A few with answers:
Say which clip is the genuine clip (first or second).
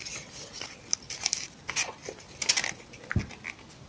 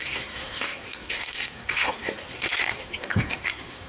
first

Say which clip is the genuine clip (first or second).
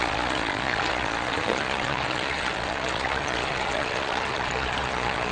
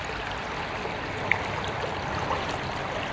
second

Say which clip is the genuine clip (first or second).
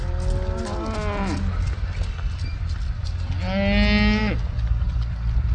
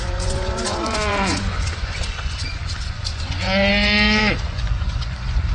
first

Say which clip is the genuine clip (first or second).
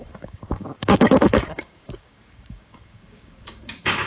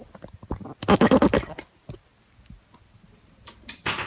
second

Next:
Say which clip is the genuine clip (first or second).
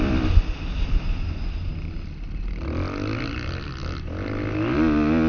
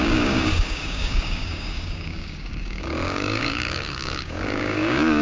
first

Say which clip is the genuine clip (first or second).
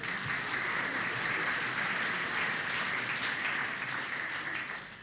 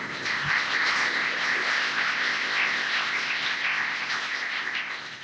first